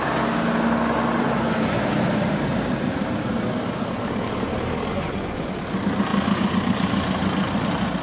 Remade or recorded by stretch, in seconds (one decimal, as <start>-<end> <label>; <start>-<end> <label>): 0.0-4.9 recorded; 4.9-5.5 remade; 5.5-8.0 recorded